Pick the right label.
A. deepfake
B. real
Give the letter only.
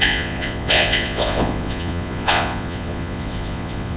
A